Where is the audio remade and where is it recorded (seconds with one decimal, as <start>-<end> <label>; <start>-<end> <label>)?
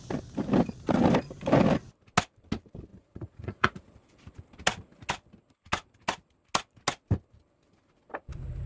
0.0-2.9 recorded; 2.9-3.9 remade; 3.9-8.7 recorded